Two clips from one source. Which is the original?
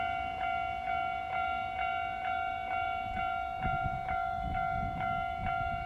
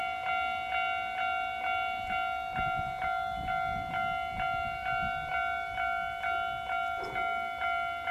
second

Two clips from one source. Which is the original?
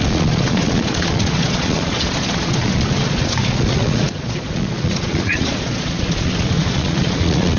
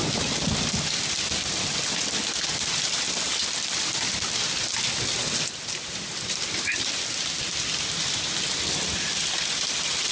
second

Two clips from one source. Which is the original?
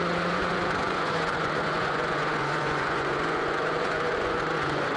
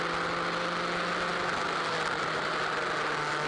second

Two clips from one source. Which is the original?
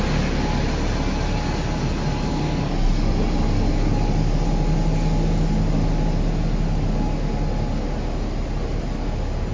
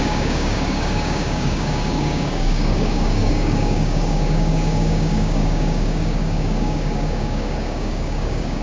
first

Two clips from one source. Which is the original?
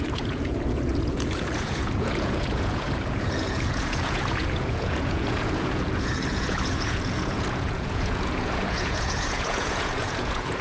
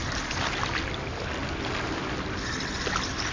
second